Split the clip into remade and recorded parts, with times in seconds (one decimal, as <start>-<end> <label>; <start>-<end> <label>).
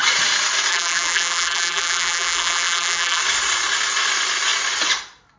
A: 0.0-0.7 recorded; 0.7-3.2 remade; 3.2-5.4 recorded